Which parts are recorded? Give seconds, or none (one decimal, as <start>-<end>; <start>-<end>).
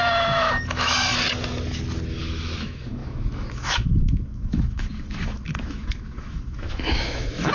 1.1-2.2